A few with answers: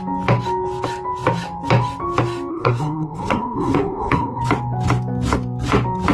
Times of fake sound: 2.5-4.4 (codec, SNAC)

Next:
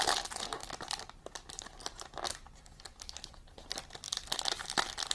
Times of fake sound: none

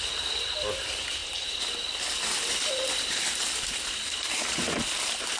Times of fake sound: none

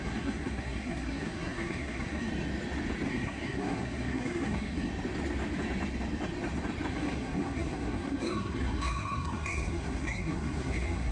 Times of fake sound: 0.0-2.3 (codec, SNAC); 3.1-4.9; 6.9-11.1

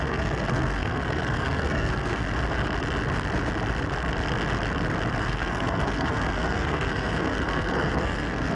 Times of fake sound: 0.0-2.2 (codec, SNAC); 5.2-8.6

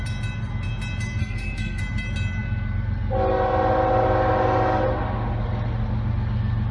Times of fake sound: 1.2-1.8 (codec, SNAC)

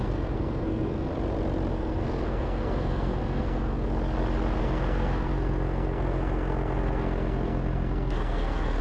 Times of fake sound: 0.0-1.1 (codec, SNAC); 1.7-3.9; 4.6-8.8

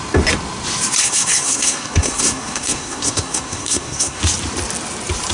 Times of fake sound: 1.0-4.2 (codec, SNAC)